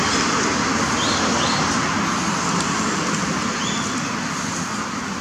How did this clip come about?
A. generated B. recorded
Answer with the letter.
B